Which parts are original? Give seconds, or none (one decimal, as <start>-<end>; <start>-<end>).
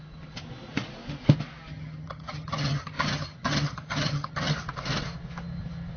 0.0-1.7; 4.5-6.0